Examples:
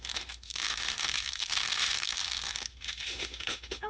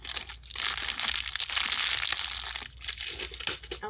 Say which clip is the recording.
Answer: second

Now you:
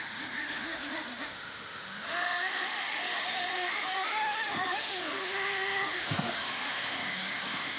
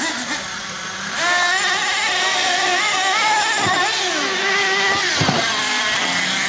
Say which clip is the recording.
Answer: second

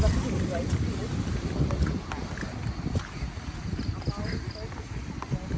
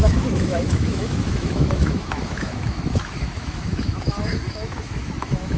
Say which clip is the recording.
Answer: first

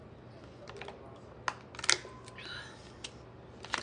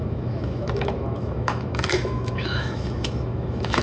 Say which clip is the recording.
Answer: first